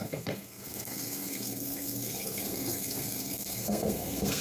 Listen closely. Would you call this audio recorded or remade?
remade